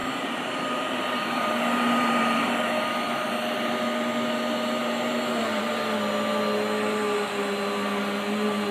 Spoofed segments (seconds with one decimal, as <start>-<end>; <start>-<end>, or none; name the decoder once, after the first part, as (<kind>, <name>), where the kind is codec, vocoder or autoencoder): 0.0-2.5 (vocoder, BigVGAN v2); 4.8-5.7